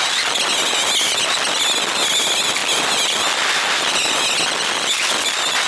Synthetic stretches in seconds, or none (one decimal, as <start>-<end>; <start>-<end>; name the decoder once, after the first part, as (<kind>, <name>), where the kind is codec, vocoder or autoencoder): none

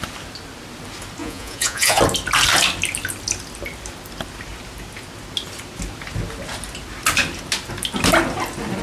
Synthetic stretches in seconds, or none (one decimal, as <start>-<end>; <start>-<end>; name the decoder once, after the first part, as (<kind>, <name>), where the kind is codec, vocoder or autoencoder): 1.2-2.0 (vocoder, Vocos)

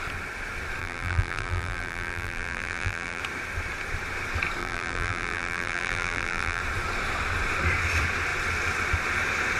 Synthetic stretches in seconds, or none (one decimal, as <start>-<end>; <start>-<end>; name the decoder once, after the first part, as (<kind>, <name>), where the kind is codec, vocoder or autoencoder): 0.8-3.2 (vocoder, BigVGAN v2); 4.6-6.6

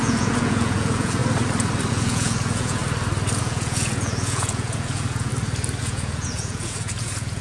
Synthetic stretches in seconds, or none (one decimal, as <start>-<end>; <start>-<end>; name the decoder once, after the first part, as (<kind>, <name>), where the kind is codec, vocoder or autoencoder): 0.0-1.2 (vocoder, Vocos); 1.9-2.8; 3.4-5.3; 5.8-7.4

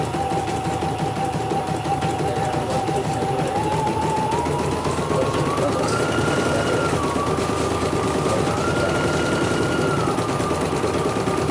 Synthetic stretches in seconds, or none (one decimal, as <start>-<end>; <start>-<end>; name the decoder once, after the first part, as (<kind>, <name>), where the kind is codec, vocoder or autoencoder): none

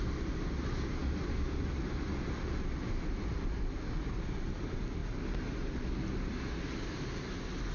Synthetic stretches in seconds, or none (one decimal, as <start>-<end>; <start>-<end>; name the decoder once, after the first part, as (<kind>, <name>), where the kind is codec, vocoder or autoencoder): 1.0-1.7 (vocoder, BigVGAN v2)